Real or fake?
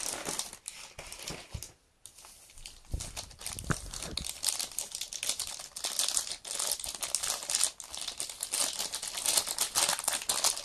real